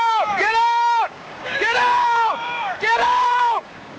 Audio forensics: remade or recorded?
remade